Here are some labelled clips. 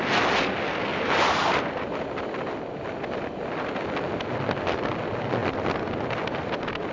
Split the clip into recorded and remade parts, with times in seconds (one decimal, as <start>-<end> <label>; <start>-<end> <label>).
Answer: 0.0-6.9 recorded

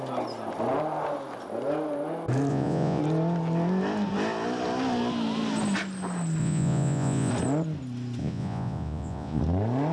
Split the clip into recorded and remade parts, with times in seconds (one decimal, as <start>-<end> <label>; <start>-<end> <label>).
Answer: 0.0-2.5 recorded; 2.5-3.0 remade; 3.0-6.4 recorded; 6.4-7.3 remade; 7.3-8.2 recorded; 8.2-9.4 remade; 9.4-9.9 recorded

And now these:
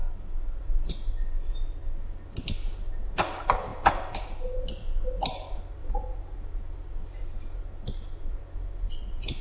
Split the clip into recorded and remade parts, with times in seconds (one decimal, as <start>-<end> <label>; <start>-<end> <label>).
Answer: 0.0-9.4 recorded